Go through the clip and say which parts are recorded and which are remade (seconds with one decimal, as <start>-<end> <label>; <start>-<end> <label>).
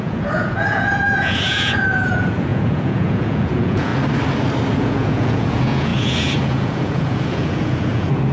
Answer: 0.0-3.9 remade; 3.9-4.7 recorded; 4.7-8.3 remade